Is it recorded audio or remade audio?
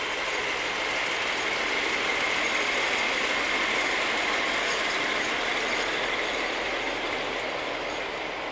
remade